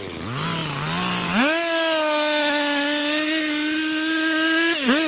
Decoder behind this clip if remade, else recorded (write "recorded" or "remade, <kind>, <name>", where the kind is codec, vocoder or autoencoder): recorded